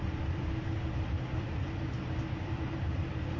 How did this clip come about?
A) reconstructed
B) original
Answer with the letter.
A